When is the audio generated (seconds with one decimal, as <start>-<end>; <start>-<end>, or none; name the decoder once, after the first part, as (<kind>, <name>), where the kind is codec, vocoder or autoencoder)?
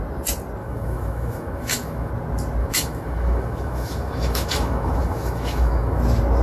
0.6-2.1 (autoencoder, DAC-VAE); 2.6-6.0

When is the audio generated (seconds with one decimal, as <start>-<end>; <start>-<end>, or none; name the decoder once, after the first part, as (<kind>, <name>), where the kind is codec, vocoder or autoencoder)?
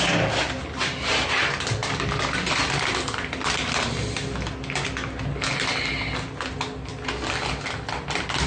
1.8-2.7 (vocoder, BigVGAN v2)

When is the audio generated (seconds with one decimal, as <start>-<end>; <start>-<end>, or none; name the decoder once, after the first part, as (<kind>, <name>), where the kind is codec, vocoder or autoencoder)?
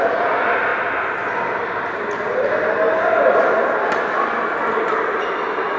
none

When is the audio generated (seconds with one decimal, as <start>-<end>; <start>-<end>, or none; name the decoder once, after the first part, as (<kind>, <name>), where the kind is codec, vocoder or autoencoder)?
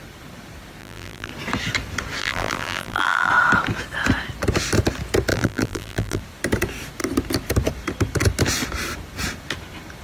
0.8-1.3 (vocoder, BigVGAN v2); 2.2-3.3; 5.3-6.2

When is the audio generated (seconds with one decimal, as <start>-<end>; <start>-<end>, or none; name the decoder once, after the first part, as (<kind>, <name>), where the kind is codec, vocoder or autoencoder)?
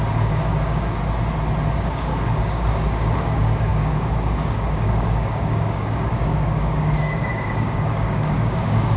0.0-1.0 (codec, DAC); 1.8-9.0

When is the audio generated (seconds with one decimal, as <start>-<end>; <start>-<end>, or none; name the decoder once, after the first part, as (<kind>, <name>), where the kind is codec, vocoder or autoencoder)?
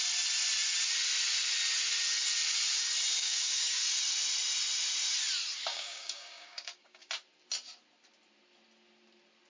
3.2-3.8 (codec, DAC); 5.7-7.1